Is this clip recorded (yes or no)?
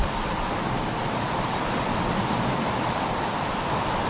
yes